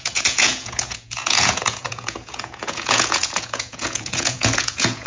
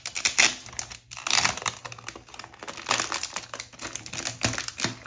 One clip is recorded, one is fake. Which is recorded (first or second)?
second